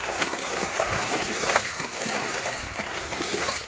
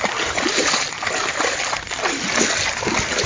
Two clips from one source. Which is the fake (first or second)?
first